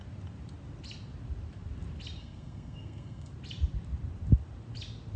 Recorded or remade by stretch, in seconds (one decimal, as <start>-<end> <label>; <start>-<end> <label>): 0.0-2.2 recorded; 2.2-3.3 remade; 3.3-5.2 recorded